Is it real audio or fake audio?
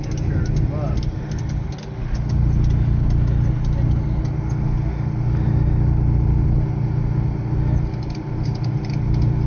real